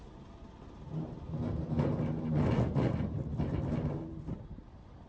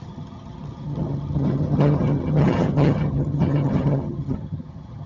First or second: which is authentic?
first